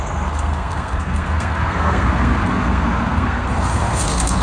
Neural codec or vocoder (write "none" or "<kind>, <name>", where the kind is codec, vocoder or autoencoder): codec, SNAC